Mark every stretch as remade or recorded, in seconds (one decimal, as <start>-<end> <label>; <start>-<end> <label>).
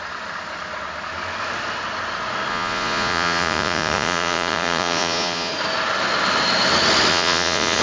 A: 0.0-2.5 recorded; 2.5-5.5 remade; 5.5-7.1 recorded; 7.1-7.8 remade